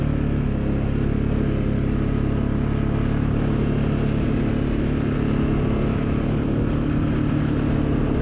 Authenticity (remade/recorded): recorded